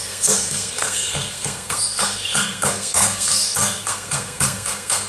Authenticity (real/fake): fake